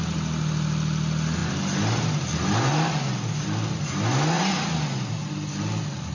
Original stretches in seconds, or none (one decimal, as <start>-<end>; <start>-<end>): 0.0-6.1